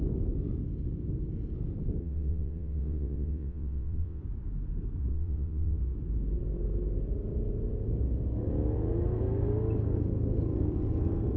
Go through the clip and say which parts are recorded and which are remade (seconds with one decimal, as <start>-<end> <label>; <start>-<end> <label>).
0.0-2.0 recorded; 2.0-4.2 remade; 4.2-5.1 recorded; 5.1-5.8 remade; 5.8-11.4 recorded